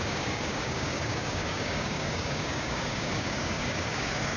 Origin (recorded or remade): remade